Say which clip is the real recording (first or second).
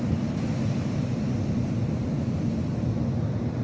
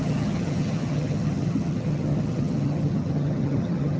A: first